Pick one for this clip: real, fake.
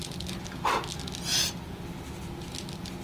real